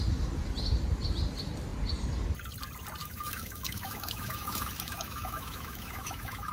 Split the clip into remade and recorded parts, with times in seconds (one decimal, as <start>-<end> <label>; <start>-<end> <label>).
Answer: 0.0-3.0 recorded; 3.0-6.5 remade